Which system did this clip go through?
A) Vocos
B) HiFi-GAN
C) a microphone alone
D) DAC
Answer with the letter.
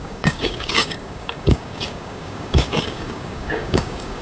D